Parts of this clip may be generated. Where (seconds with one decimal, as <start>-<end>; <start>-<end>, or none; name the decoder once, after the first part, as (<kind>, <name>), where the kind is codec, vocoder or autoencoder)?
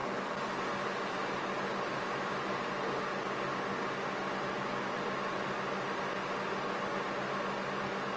none